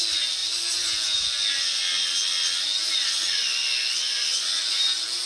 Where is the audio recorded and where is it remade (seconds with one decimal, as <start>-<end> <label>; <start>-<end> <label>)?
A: 0.0-5.3 recorded